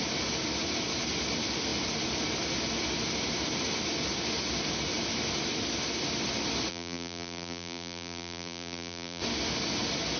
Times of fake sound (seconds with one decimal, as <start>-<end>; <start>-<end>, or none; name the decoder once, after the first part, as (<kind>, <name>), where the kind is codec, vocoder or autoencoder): 6.7-9.2 (vocoder, BigVGAN v2)